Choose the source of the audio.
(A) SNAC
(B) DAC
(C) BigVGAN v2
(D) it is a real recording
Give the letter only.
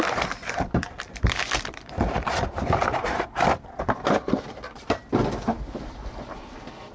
C